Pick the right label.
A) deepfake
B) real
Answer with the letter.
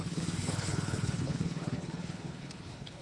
A